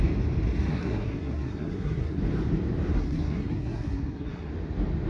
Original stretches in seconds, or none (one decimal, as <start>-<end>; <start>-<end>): 0.0-0.7; 2.2-2.9; 4.5-5.1